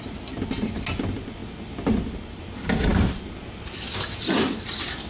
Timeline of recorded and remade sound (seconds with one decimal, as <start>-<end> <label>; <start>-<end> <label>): 0.0-5.1 recorded